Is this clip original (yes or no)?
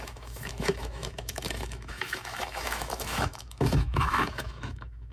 no